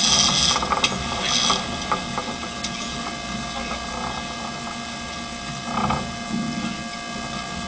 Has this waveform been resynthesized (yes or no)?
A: no